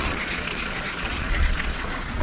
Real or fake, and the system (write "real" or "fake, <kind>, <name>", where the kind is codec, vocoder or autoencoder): fake, vocoder, Vocos